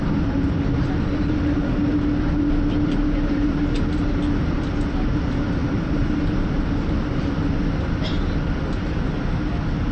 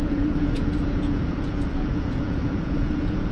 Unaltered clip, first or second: first